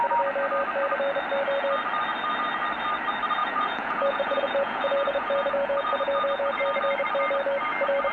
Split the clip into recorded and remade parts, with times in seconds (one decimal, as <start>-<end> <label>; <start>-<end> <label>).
0.0-3.4 recorded; 3.4-6.6 remade; 6.6-8.1 recorded